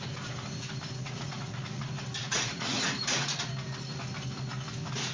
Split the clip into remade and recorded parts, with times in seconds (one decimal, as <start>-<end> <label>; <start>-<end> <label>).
0.0-1.0 recorded; 1.0-1.8 remade; 1.8-2.2 recorded; 2.2-3.5 remade; 3.5-5.1 recorded